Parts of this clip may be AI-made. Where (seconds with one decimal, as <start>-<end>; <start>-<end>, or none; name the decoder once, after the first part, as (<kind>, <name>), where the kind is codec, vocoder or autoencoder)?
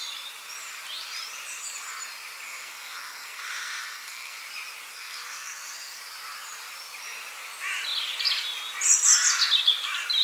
2.5-4.4 (codec, SNAC); 4.9-6.0